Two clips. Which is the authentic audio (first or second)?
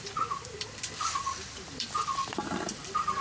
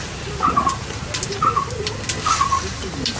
second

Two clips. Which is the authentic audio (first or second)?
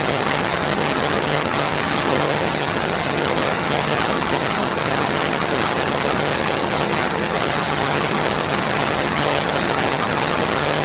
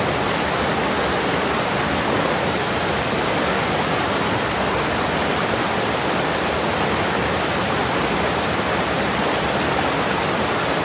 second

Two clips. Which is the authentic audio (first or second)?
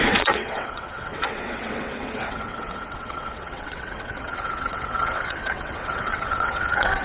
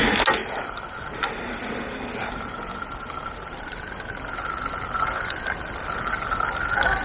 second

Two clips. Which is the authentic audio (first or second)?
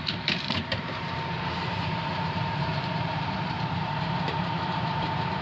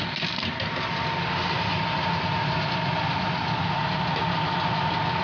second